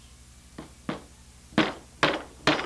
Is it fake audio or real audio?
real